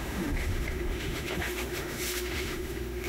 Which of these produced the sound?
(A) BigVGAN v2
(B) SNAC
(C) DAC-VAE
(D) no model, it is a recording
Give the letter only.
C